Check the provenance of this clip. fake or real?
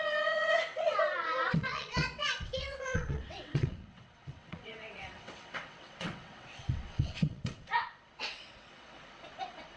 fake